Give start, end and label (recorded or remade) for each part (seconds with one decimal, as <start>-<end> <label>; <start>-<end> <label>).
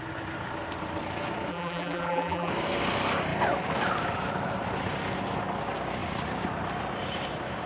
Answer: 0.0-1.5 recorded; 1.5-2.5 remade; 2.5-7.7 recorded